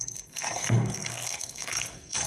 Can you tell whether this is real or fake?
fake